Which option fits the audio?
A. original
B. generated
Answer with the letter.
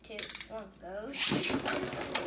A